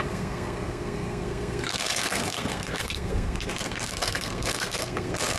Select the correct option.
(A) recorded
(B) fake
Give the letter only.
B